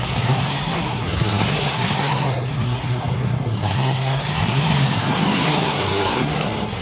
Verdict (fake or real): fake